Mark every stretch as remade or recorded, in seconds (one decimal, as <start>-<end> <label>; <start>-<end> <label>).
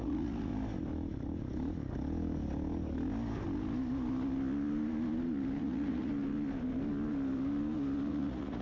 0.0-0.5 remade; 0.5-5.6 recorded; 5.6-6.1 remade; 6.1-8.1 recorded; 8.1-8.6 remade